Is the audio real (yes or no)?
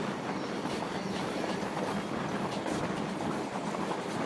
yes